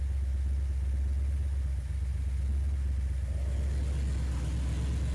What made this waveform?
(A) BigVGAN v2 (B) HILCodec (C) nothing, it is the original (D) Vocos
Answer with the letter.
C